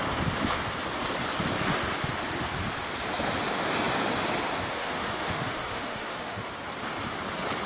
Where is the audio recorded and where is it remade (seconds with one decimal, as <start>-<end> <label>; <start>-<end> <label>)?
0.0-4.7 recorded; 4.7-6.5 remade; 6.5-7.7 recorded